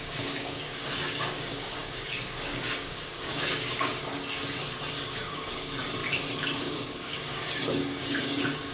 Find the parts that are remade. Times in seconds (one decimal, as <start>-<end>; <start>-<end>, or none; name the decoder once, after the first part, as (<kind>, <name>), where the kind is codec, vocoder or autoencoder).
0.0-4.1 (codec, DAC); 4.9-6.0; 6.6-8.7